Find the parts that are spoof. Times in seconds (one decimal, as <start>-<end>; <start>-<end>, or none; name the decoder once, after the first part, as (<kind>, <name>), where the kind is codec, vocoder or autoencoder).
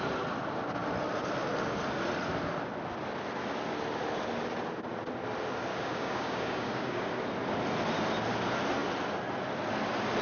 5.7-7.1 (codec, DAC)